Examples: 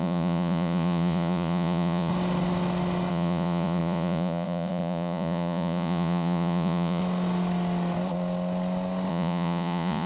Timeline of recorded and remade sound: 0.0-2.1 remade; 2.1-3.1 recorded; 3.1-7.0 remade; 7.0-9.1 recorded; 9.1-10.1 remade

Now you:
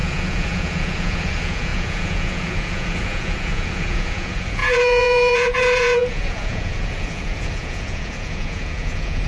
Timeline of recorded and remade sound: 0.0-9.3 remade